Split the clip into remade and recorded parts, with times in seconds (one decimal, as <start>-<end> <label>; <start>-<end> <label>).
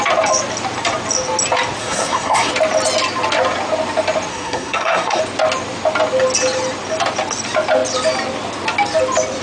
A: 0.0-1.8 recorded; 1.8-2.5 remade; 2.5-4.3 recorded; 4.3-5.2 remade; 5.2-9.4 recorded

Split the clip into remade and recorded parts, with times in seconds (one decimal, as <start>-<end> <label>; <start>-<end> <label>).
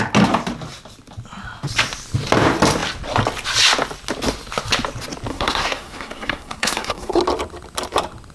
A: 0.0-5.3 recorded; 5.3-7.2 remade; 7.2-8.3 recorded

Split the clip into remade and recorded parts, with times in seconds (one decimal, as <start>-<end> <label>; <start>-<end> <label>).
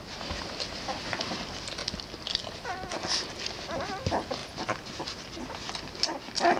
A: 0.0-6.6 recorded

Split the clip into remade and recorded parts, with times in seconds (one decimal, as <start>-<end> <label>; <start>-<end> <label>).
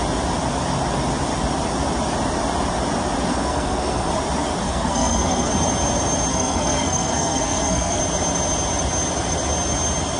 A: 0.0-3.3 recorded; 3.3-4.1 remade; 4.1-4.6 recorded; 4.6-5.5 remade; 5.5-6.3 recorded; 6.3-8.0 remade; 8.0-10.2 recorded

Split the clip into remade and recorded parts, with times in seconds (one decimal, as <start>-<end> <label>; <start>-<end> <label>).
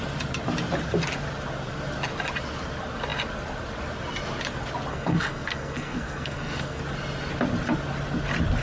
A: 0.0-4.9 recorded; 4.9-6.8 remade; 6.8-8.6 recorded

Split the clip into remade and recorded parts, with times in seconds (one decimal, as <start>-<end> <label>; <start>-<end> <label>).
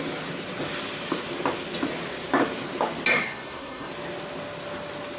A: 0.0-3.1 recorded; 3.1-3.9 remade; 3.9-5.2 recorded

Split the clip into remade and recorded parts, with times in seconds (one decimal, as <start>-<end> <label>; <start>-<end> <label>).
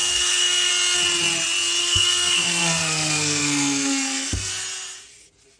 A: 0.0-0.7 remade; 0.7-1.8 recorded; 1.8-4.5 remade; 4.5-5.6 recorded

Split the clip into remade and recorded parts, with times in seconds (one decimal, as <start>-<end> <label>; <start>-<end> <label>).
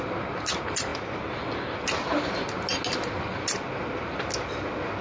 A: 0.0-5.0 recorded